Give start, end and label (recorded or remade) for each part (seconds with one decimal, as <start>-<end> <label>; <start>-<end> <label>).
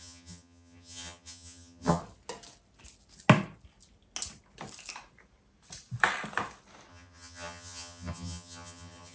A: 0.0-2.0 remade; 2.0-6.9 recorded; 6.9-9.1 remade